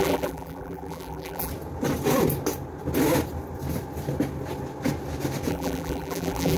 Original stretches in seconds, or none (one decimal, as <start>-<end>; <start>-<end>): 1.5-5.5

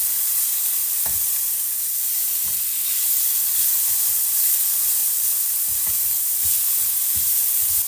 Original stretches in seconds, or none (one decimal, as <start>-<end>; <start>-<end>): 3.1-5.0; 6.4-7.9

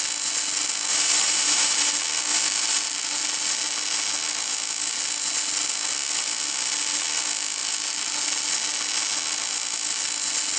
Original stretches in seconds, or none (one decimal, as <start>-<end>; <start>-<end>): 0.0-0.9; 1.9-2.3; 2.8-10.6

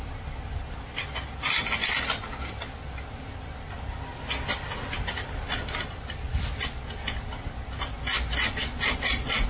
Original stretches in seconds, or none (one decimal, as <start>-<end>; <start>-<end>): 0.0-9.5